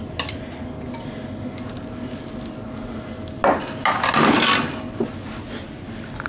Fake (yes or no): no